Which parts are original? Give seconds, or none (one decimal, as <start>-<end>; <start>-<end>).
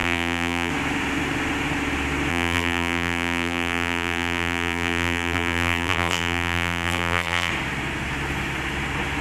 0.7-2.3; 7.5-9.2